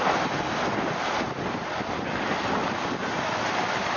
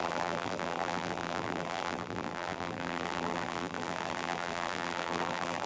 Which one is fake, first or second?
second